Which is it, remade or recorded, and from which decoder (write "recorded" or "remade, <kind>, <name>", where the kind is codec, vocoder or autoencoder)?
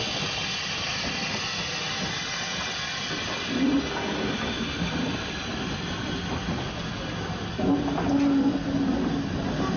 recorded